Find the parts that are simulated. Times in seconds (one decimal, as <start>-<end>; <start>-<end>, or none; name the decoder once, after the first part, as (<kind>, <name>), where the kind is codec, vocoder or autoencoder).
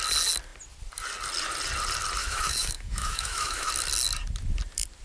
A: 2.2-3.7 (autoencoder, DAC-VAE)